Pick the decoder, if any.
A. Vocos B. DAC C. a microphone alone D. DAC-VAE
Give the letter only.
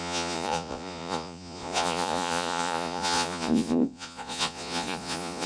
A